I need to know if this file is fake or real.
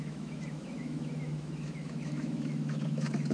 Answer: fake